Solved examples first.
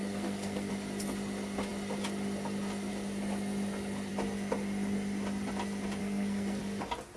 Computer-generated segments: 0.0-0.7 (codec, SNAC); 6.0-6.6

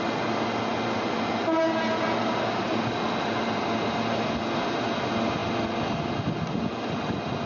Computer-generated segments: none

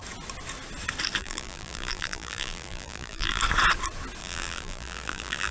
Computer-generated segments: 1.2-3.4 (vocoder, BigVGAN v2); 4.2-5.5

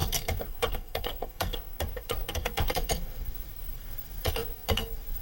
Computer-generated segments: 0.0-5.2 (codec, SNAC)

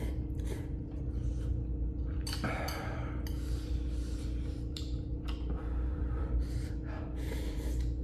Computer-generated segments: 5.9-6.7 (vocoder, BigVGAN v2)